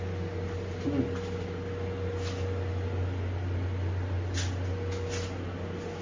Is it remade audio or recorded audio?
recorded